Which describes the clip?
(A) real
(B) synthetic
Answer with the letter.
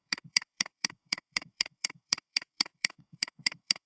B